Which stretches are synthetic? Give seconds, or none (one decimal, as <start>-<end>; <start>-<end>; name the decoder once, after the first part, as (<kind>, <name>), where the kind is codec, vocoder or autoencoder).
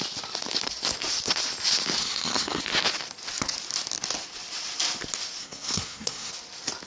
2.0-2.6 (codec, SNAC); 5.4-6.3